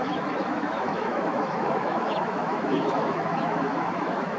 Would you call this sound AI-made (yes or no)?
yes